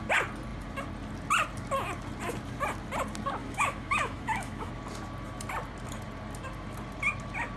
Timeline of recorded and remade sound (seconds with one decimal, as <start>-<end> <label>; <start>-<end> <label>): 0.0-3.4 recorded; 3.4-4.7 remade; 4.7-7.6 recorded